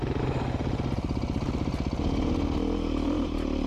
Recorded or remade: recorded